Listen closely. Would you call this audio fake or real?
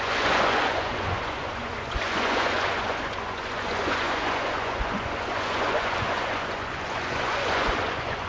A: fake